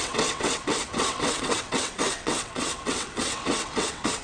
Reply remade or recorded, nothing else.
remade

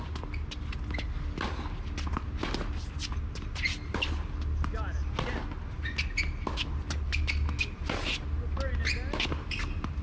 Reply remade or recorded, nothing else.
recorded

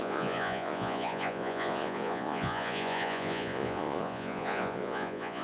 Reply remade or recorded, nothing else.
remade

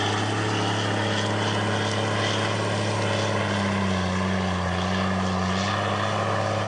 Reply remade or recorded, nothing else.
recorded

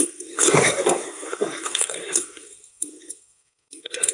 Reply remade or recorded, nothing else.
remade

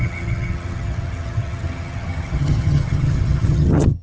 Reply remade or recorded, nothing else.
remade